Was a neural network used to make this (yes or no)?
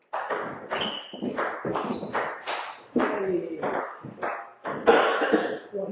yes